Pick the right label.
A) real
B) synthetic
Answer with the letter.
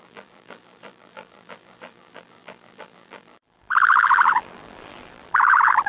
B